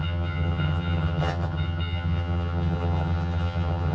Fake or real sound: fake